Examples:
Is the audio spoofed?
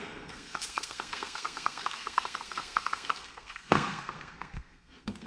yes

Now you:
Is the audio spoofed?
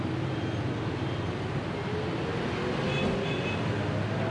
no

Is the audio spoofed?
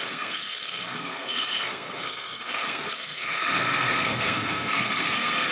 yes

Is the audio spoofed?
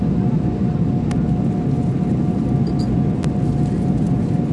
no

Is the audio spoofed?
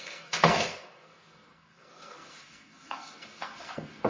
yes